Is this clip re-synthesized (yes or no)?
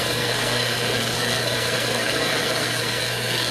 yes